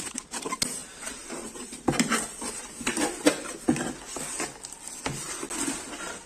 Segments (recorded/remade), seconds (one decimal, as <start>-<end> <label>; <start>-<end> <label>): 0.0-0.8 recorded; 0.8-2.7 remade; 2.7-6.3 recorded